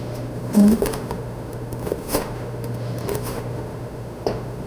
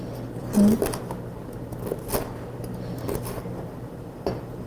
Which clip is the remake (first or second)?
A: first